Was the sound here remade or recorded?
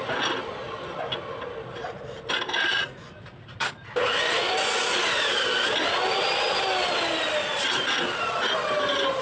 recorded